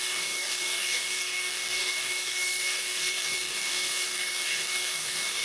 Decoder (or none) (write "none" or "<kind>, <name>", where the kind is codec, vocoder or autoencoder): codec, DAC